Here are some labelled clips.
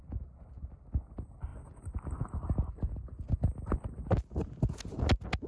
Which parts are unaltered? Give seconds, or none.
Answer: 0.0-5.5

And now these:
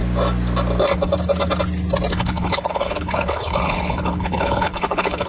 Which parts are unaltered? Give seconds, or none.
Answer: 0.0-2.1